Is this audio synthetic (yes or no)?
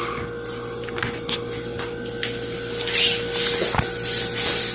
no